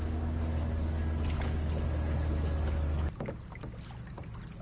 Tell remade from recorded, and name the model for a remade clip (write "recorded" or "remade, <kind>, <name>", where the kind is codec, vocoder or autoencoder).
recorded